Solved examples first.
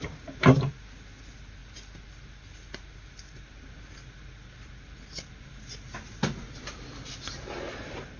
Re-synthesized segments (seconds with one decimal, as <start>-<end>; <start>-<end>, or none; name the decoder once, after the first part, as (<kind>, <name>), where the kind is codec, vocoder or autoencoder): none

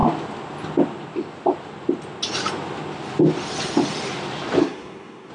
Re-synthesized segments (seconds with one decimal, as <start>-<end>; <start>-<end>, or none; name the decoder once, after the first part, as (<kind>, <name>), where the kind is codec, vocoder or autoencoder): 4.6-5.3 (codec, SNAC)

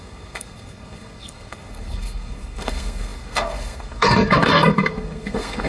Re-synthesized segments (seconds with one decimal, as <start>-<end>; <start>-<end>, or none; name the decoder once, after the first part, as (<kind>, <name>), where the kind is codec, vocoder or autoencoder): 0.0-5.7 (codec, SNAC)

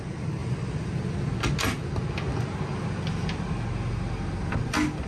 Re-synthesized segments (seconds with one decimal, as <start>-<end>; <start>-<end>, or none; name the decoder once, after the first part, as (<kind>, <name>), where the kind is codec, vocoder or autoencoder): none